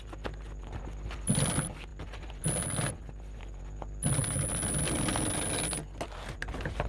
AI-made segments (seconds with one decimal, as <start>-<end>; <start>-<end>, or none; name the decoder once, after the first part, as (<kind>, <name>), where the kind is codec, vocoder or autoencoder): none